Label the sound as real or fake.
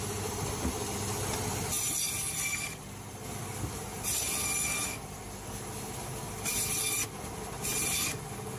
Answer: real